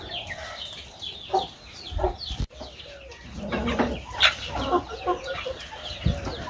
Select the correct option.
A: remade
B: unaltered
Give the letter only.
B